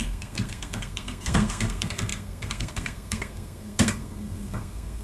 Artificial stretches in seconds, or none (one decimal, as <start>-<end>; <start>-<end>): 0.0-5.0